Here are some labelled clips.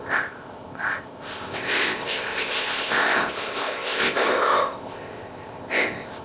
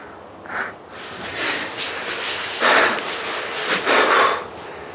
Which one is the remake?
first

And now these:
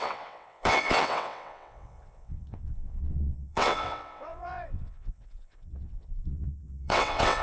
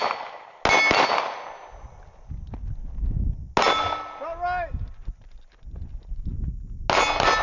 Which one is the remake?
first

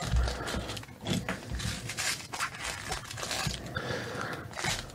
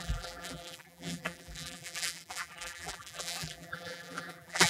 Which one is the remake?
second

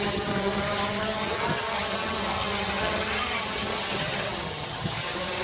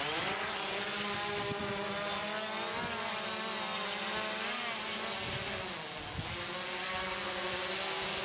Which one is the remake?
first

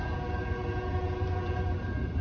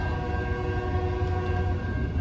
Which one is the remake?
first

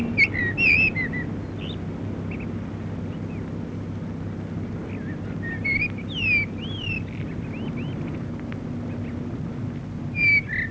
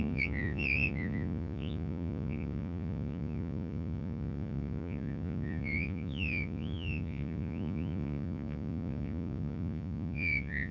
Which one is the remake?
second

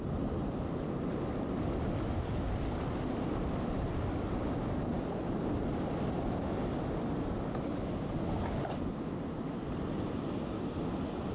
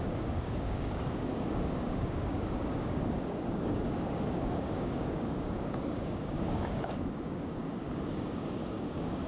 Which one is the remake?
second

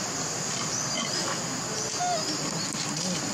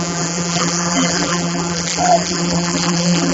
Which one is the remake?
second